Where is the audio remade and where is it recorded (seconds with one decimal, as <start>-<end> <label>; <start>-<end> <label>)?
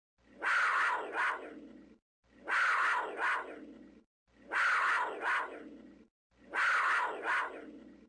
0.0-8.1 recorded